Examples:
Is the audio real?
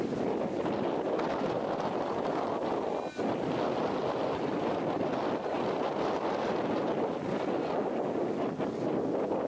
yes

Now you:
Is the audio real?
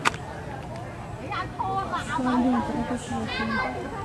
yes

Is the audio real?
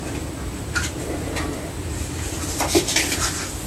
no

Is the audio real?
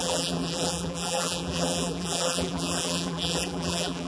no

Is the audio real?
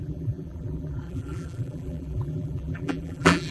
no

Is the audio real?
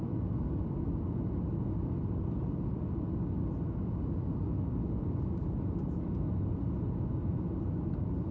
yes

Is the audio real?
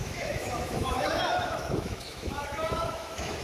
no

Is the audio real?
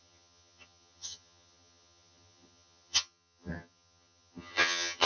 no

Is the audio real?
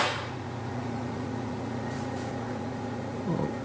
no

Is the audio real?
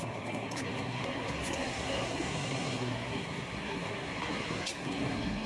no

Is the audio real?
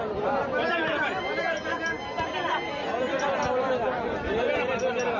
yes